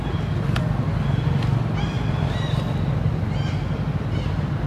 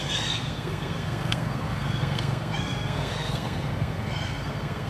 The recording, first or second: first